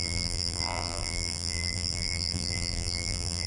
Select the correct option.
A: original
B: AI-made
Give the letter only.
B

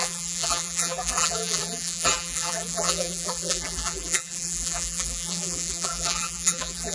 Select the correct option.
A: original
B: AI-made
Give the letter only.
B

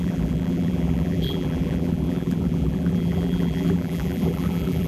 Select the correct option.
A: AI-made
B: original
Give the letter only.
A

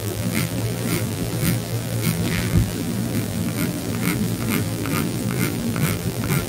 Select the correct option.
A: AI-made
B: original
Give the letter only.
A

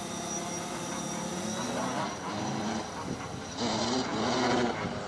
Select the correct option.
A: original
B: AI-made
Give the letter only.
A